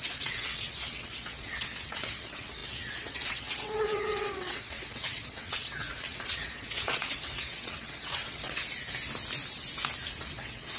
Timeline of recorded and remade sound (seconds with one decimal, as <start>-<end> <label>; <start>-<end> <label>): 0.0-8.6 remade; 8.6-10.2 recorded; 10.2-10.8 remade